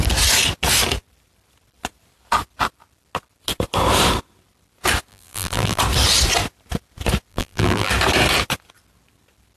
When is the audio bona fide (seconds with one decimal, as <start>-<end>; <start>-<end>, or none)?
0.0-5.1; 5.8-7.3; 7.9-9.6